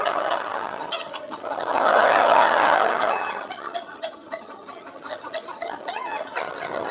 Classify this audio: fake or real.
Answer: fake